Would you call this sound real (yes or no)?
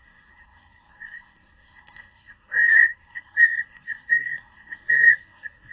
no